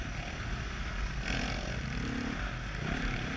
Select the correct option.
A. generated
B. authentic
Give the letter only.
B